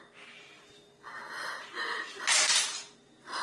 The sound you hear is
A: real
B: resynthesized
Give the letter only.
A